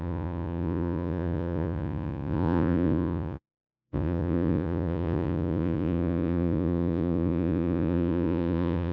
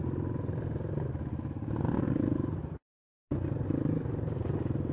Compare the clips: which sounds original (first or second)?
second